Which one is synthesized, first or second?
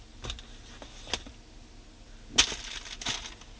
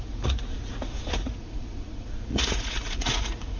second